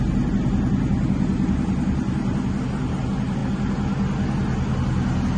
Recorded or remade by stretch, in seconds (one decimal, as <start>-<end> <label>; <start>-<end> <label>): 0.0-5.4 recorded